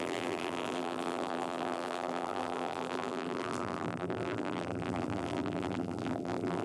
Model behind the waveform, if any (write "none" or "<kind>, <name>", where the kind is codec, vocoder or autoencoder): vocoder, BigVGAN v2